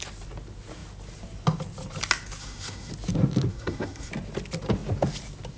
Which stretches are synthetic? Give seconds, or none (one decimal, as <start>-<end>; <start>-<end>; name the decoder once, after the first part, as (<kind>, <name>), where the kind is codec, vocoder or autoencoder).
2.4-2.9 (codec, SNAC); 3.5-4.1